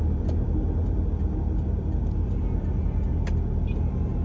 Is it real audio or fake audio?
real